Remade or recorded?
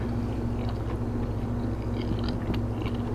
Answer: recorded